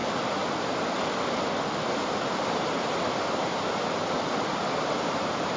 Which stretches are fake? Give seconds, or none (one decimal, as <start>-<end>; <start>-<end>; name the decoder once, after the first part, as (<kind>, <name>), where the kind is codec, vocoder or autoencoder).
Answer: 3.4-5.6 (vocoder, BigVGAN v2)